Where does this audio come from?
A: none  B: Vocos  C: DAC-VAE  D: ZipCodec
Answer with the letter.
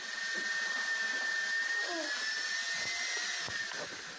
A